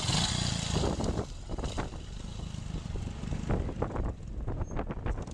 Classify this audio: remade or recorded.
recorded